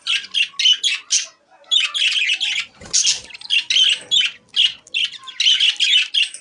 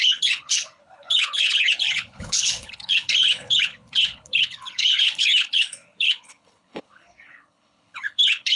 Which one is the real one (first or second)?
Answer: first